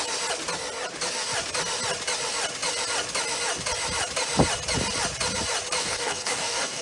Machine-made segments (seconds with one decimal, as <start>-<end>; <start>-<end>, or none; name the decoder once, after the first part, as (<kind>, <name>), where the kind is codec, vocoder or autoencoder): 5.8-6.8 (codec, DAC)